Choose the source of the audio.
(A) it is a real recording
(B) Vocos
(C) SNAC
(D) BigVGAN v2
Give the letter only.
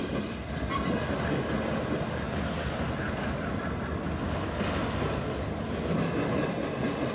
A